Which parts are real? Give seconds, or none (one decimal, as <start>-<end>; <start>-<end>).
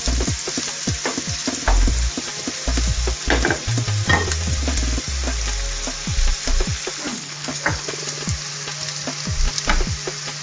0.0-7.1; 8.0-10.4